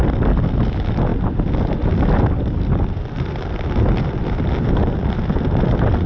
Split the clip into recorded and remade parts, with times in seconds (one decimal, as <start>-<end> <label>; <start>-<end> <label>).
0.0-6.1 recorded

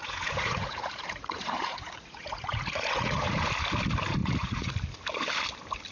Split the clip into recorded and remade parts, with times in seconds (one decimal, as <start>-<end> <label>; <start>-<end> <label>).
0.0-3.5 remade; 3.5-4.2 recorded; 4.2-4.7 remade; 4.7-5.9 recorded

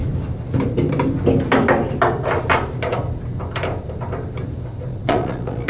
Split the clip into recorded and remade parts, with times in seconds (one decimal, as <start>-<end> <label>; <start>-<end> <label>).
0.0-4.9 recorded; 4.9-5.7 remade

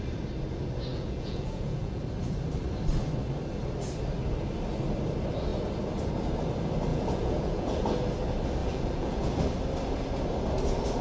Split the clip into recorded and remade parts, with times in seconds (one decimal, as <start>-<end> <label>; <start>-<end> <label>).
0.0-0.9 recorded; 0.9-2.0 remade; 2.0-6.9 recorded; 6.9-7.8 remade; 7.8-8.6 recorded; 8.6-9.3 remade; 9.3-11.0 recorded

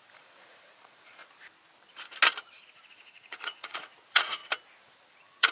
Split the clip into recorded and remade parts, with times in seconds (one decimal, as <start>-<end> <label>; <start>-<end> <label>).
0.0-1.2 remade; 1.2-2.9 recorded; 2.9-4.4 remade; 4.4-5.1 recorded; 5.1-5.5 remade

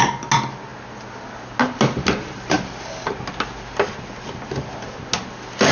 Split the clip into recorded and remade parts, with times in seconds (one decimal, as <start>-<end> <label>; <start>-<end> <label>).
0.0-5.7 recorded

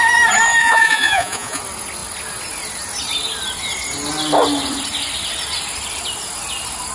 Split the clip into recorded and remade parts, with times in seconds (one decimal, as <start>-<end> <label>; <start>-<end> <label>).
0.0-0.6 recorded; 0.6-1.6 remade; 1.6-6.9 recorded

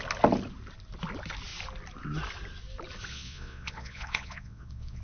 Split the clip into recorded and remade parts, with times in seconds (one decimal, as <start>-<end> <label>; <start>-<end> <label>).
0.0-3.1 recorded; 3.1-5.0 remade